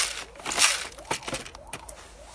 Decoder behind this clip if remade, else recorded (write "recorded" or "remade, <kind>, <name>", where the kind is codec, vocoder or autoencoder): recorded